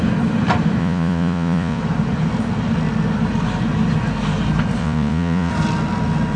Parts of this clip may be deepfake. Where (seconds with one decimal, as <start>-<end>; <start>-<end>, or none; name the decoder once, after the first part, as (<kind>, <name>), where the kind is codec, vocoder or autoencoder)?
0.8-1.8 (vocoder, Vocos); 4.8-5.5